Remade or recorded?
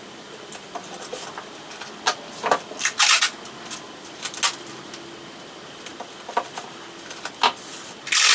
recorded